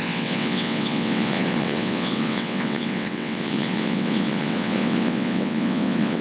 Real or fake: fake